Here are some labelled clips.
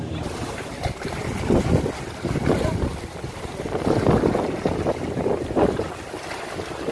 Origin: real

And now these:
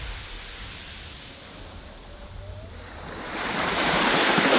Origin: real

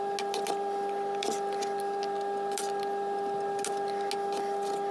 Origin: real